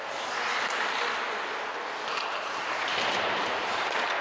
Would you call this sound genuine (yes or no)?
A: yes